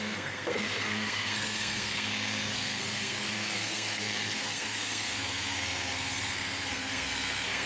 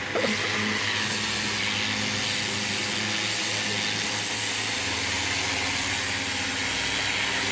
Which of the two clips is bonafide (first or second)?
second